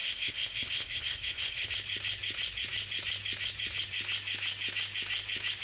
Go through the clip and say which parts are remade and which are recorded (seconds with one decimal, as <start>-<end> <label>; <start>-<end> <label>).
0.0-1.7 remade; 1.7-5.6 recorded